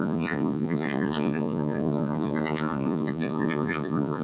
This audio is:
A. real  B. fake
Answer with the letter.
B